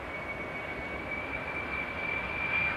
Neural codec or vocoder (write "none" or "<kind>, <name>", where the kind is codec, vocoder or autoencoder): none